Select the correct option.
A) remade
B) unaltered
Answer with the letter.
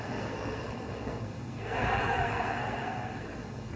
A